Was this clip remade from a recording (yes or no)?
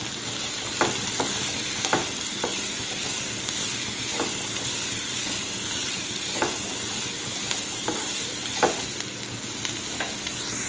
no